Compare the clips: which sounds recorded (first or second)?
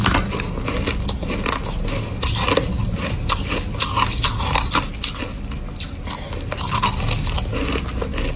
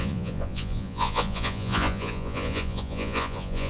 first